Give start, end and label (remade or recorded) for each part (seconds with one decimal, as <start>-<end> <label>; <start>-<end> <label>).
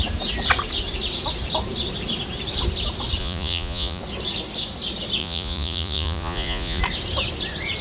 0.0-3.2 recorded; 3.2-4.0 remade; 4.0-5.2 recorded; 5.2-6.8 remade; 6.8-7.8 recorded